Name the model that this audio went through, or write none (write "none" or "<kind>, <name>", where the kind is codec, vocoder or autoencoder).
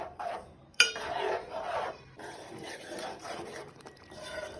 vocoder, BigVGAN v2